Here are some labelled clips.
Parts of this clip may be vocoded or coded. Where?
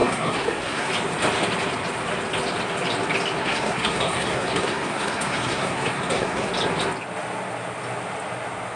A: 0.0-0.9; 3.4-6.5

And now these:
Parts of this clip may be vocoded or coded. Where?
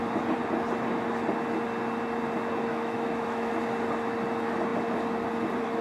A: 2.7-3.5